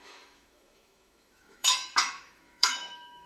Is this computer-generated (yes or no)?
yes